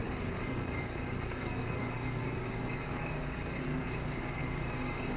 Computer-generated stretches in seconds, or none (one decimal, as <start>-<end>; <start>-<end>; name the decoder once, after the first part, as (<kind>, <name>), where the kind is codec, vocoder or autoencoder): 0.0-5.2 (codec, DAC)